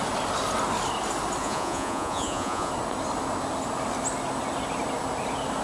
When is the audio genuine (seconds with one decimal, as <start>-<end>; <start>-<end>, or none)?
0.0-1.4; 2.7-5.6